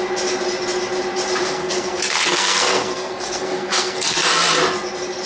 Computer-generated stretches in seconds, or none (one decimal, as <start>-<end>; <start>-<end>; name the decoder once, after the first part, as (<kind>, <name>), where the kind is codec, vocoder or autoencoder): 1.4-4.3 (codec, SNAC)